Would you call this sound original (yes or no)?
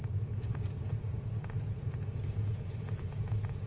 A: no